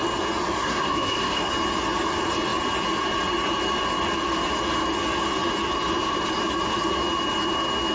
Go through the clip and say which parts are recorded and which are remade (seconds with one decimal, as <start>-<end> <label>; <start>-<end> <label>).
0.0-0.6 recorded; 0.6-1.5 remade; 1.5-7.9 recorded